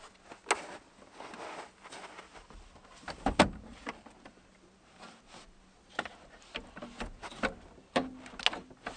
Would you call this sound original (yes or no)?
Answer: yes